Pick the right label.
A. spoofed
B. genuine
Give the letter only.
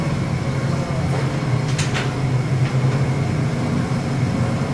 B